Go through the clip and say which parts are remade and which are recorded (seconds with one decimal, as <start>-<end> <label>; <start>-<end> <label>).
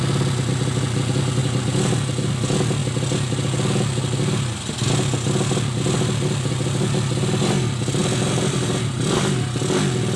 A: 0.0-1.4 recorded; 1.4-2.3 remade; 2.3-8.0 recorded; 8.0-9.6 remade; 9.6-10.2 recorded